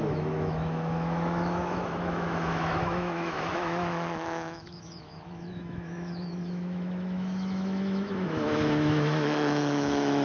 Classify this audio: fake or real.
fake